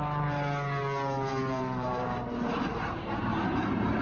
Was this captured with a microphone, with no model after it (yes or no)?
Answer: no